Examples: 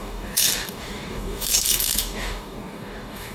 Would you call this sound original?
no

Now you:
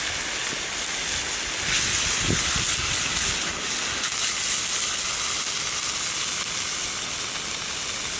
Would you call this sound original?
yes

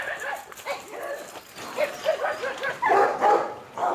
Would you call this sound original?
yes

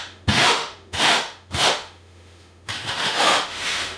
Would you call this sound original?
no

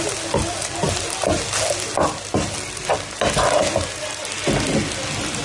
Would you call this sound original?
yes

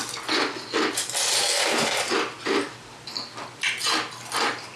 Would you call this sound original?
yes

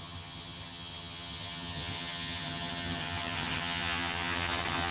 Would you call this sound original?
no